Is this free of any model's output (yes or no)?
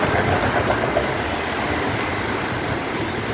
yes